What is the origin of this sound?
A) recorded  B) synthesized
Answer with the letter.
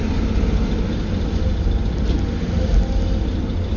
A